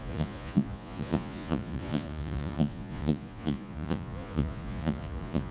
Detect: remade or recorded remade